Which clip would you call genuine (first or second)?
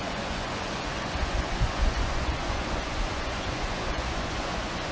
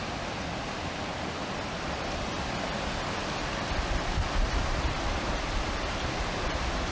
second